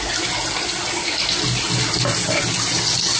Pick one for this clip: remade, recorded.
recorded